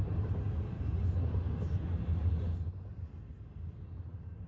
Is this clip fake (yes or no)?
no